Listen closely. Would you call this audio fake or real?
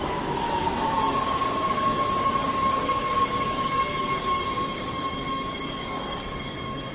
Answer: fake